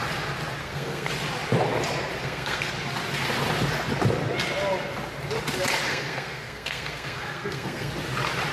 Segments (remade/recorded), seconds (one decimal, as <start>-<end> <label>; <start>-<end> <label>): 0.0-0.6 recorded; 0.6-1.1 remade; 1.1-2.2 recorded; 2.2-2.7 remade; 2.7-5.9 recorded; 5.9-7.9 remade; 7.9-8.5 recorded